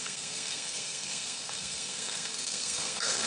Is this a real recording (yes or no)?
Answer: no